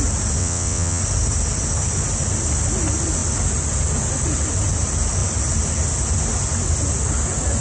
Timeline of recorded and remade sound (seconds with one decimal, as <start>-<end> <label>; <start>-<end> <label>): 0.0-0.4 recorded; 0.4-1.0 remade; 1.0-7.6 recorded